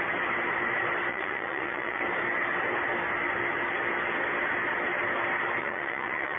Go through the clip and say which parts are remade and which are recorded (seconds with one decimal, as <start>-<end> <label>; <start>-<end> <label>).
0.0-1.1 recorded; 1.1-2.0 remade; 2.0-5.6 recorded; 5.6-6.4 remade